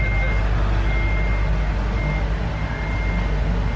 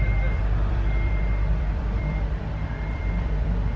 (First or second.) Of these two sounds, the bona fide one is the first